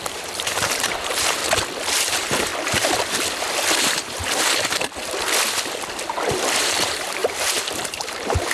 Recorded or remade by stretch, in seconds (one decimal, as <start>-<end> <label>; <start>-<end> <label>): 0.0-1.4 remade; 1.4-1.9 recorded; 1.9-2.5 remade; 2.5-3.8 recorded; 3.8-4.2 remade; 4.2-6.6 recorded; 6.6-7.2 remade; 7.2-7.9 recorded; 7.9-8.5 remade